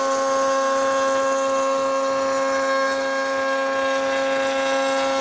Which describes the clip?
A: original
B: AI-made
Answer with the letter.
A